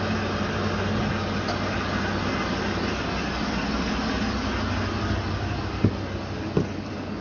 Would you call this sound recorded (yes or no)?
yes